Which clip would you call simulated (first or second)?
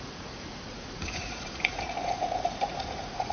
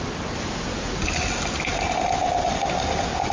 first